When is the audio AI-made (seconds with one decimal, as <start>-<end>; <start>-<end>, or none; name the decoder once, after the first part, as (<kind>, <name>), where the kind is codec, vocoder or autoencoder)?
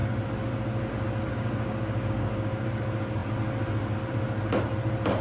1.3-2.6 (codec, DAC)